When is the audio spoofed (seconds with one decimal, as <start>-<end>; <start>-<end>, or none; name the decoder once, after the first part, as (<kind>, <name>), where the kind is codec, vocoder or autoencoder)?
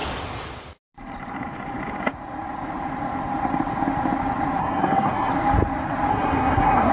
4.6-5.3 (codec, SNAC); 6.1-6.9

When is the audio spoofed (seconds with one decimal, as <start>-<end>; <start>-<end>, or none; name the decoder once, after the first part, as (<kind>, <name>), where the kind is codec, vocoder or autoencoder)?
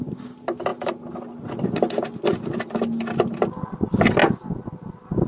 none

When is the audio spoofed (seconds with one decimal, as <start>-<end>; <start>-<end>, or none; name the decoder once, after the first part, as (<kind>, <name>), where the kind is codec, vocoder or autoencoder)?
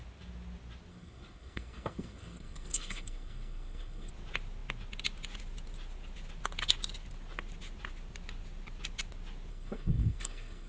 0.9-4.1 (codec, SNAC); 9.5-10.7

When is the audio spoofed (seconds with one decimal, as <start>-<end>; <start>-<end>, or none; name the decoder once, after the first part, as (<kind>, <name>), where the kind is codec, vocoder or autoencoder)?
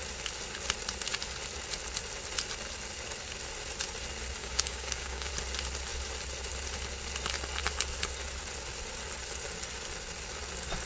4.4-5.3 (codec, DAC)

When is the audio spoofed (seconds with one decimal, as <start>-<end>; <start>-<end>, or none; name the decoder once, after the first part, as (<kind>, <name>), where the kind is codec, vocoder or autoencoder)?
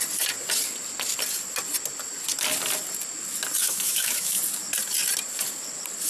3.6-4.4 (autoencoder, DAC-VAE)